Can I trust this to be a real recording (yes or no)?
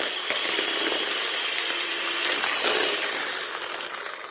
yes